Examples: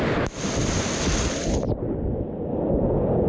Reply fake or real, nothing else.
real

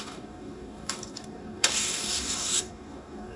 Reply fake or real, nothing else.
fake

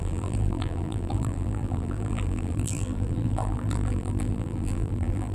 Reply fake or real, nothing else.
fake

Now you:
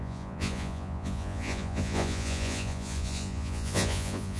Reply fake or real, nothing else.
fake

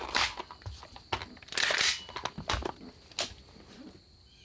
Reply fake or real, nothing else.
real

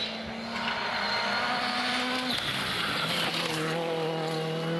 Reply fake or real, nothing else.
real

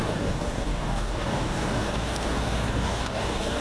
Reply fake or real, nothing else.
fake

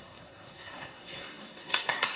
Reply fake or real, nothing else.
fake